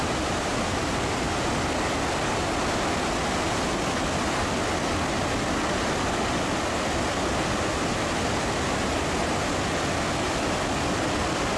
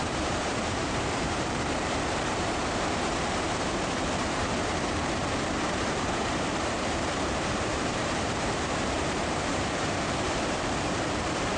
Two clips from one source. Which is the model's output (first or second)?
second